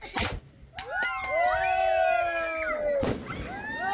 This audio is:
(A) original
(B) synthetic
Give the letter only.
A